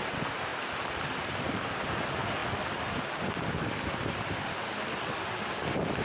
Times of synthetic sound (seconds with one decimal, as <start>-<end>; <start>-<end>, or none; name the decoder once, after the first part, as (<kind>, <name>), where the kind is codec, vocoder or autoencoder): 0.0-6.0 (vocoder, BigVGAN v2)